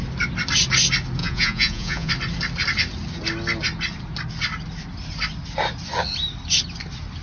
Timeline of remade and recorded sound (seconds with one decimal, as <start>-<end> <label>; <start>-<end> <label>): 0.0-1.2 recorded; 1.2-2.1 remade; 2.1-7.2 recorded